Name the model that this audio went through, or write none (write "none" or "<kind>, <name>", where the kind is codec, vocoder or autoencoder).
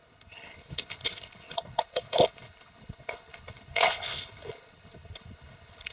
codec, HILCodec